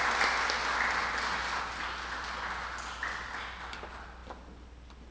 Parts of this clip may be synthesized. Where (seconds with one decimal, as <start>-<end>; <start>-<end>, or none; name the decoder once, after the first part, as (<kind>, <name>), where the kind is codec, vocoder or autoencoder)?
none